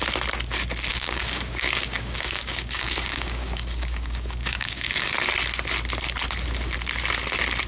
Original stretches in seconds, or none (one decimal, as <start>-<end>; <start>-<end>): 0.0-0.9; 5.1-7.7

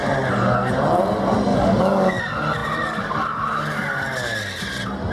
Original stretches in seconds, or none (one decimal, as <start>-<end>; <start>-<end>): 0.0-1.5; 2.2-5.1

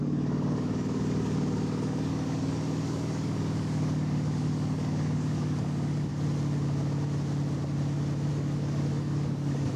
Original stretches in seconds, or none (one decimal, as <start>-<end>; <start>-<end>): 6.1-8.3

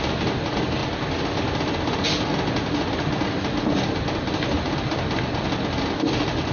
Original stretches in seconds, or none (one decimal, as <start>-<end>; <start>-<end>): 0.0-6.5